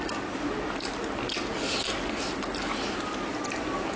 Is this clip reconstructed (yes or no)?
no